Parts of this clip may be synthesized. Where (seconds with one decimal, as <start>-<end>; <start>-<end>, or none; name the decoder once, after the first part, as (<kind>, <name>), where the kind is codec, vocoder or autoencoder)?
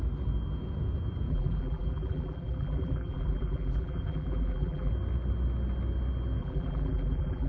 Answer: 1.3-4.9 (vocoder, BigVGAN v2); 6.4-7.5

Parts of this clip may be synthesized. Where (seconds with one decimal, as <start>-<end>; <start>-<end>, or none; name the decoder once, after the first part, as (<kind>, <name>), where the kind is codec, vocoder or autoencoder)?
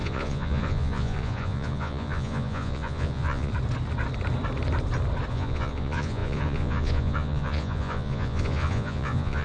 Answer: 0.0-3.5 (vocoder, Vocos); 5.3-9.4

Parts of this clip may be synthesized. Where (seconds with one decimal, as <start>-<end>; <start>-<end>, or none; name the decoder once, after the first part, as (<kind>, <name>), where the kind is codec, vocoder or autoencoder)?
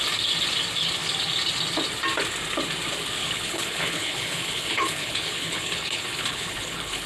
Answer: 3.2-7.1 (codec, HILCodec)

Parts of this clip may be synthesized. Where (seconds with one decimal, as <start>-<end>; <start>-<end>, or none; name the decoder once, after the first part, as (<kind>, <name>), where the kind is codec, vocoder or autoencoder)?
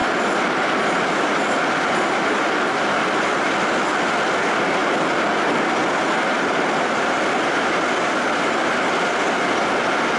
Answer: none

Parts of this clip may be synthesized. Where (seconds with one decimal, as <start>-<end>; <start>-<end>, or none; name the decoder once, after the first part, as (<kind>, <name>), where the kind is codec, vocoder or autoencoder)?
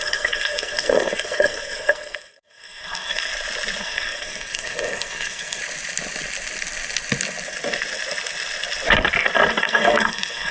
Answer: 0.0-3.3 (codec, SNAC); 3.8-5.6; 9.6-10.5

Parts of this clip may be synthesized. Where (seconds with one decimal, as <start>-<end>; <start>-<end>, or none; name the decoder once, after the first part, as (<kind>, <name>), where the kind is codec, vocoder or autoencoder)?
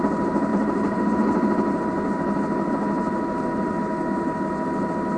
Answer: 0.5-1.0 (vocoder, BigVGAN v2)